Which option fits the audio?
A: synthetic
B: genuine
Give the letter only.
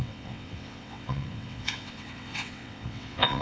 A